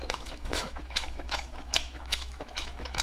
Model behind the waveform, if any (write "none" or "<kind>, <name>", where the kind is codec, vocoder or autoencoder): autoencoder, DAC-VAE